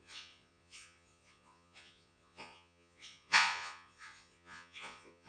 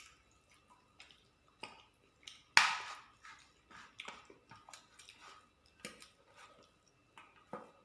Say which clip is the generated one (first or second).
first